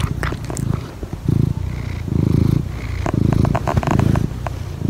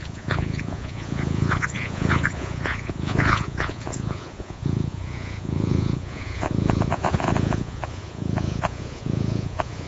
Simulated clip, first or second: second